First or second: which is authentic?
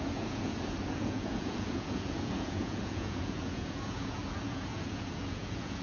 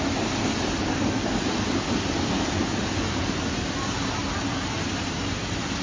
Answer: second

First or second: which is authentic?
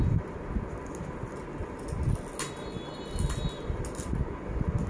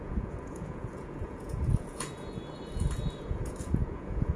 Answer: first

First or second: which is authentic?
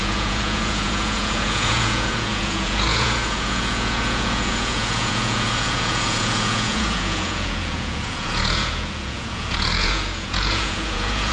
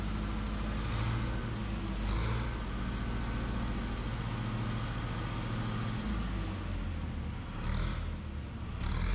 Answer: second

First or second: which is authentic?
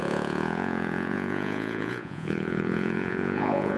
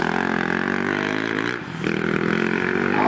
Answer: second